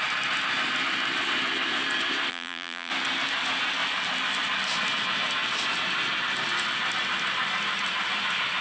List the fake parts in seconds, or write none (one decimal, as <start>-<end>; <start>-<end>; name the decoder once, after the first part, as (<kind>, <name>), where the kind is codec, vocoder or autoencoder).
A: 2.3-2.9 (vocoder, BigVGAN v2)